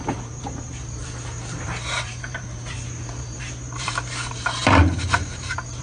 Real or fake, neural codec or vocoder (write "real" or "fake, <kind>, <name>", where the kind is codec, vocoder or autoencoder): fake, vocoder, BigVGAN v2